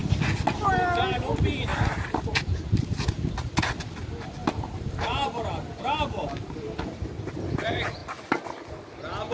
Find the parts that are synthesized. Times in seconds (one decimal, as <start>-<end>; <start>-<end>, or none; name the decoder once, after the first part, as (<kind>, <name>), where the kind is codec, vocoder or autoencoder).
1.7-3.3 (vocoder, BigVGAN v2); 4.4-5.5